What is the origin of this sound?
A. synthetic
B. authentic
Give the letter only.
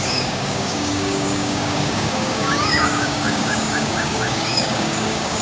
A